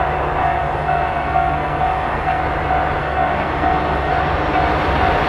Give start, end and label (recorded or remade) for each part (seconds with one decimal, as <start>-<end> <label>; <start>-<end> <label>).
0.0-0.4 recorded; 0.4-2.4 remade; 2.4-3.0 recorded; 3.0-4.1 remade; 4.1-5.3 recorded